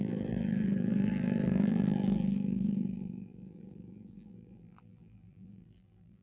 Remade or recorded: remade